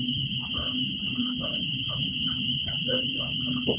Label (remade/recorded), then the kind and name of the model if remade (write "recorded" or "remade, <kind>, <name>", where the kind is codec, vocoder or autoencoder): remade, codec, HILCodec